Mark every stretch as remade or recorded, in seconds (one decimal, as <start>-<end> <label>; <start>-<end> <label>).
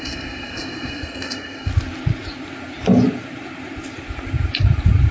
0.0-1.7 remade; 1.7-5.1 recorded